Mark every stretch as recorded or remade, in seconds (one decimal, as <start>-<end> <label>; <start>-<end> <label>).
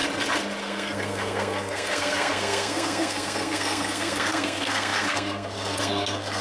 0.0-0.6 recorded; 0.6-6.4 remade